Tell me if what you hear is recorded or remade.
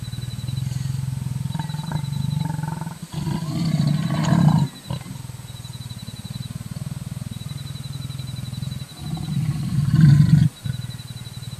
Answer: recorded